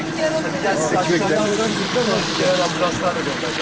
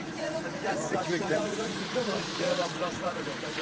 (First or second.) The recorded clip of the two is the first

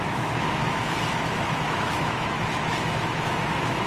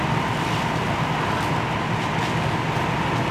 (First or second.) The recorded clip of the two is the second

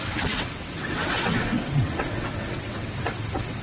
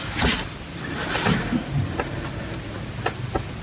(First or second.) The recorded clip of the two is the second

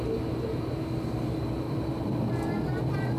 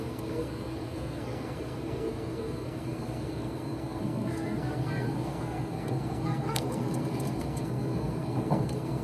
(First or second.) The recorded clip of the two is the first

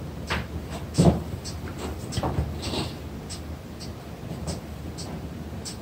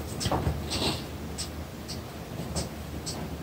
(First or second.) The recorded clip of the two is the second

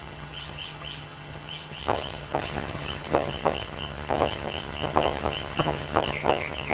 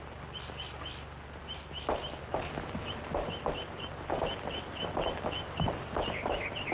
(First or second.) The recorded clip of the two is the second